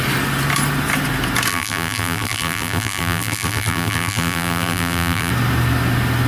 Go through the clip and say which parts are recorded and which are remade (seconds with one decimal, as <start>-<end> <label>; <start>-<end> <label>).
0.0-1.5 recorded; 1.5-5.3 remade; 5.3-6.3 recorded